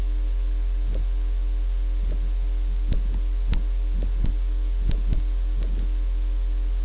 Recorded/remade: recorded